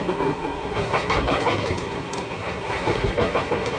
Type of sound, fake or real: fake